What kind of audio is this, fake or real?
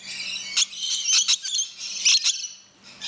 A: real